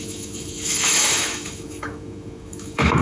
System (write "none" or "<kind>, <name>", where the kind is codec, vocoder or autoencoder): autoencoder, DAC-VAE